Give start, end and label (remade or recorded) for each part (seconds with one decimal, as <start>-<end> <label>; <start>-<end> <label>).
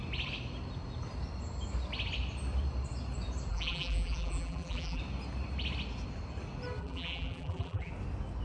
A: 0.0-3.5 recorded; 3.5-5.0 remade; 5.0-6.8 recorded; 6.8-7.9 remade; 7.9-8.4 recorded